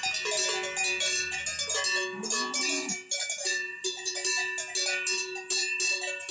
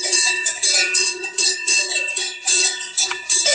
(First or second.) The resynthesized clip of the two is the second